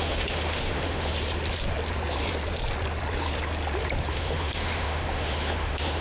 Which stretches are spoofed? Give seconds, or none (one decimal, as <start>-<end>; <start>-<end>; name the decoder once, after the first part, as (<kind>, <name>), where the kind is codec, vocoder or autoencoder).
0.0-1.1 (autoencoder, DAC-VAE); 4.1-6.0